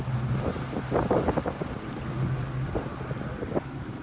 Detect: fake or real real